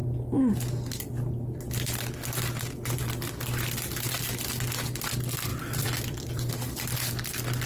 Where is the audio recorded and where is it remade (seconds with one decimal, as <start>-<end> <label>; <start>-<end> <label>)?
0.0-5.5 recorded; 5.5-6.5 remade; 6.5-7.7 recorded